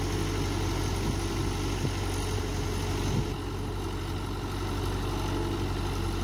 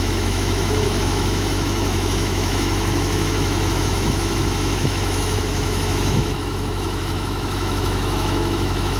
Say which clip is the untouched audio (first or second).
first